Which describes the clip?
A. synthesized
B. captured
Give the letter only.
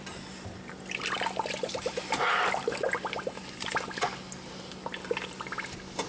B